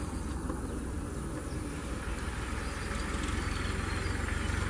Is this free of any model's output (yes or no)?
yes